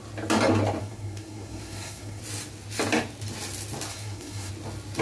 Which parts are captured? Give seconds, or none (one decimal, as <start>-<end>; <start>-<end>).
0.0-0.8; 2.2-3.9; 4.5-5.0